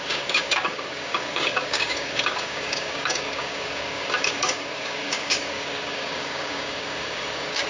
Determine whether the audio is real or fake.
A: fake